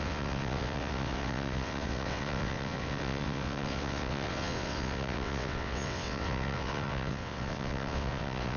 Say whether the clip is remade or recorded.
remade